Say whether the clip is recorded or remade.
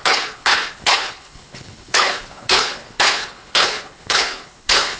remade